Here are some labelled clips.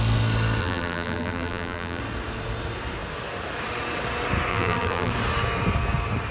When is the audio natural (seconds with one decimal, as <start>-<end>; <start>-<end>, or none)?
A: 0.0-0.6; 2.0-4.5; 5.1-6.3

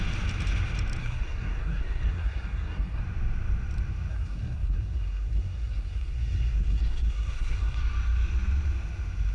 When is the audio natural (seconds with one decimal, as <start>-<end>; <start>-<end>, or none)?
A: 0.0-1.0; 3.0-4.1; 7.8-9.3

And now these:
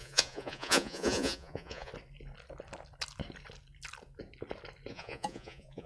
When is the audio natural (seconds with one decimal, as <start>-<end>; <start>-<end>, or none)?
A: 1.9-4.9